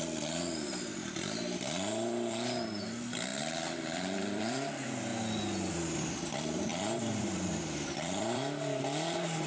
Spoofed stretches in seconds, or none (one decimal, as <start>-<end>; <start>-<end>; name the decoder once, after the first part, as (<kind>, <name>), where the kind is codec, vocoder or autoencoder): 0.0-5.1 (vocoder, BigVGAN v2); 5.7-9.5